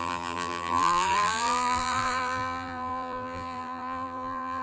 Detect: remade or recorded remade